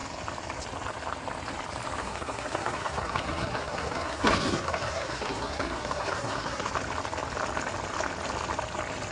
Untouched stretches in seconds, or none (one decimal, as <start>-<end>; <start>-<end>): 0.0-2.0; 6.7-9.1